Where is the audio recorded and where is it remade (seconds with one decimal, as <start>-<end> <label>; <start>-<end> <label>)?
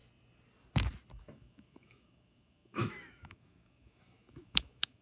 0.0-1.2 recorded; 1.2-5.0 remade